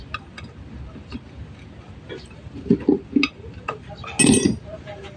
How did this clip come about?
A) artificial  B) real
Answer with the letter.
B